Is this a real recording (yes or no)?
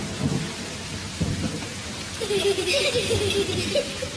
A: yes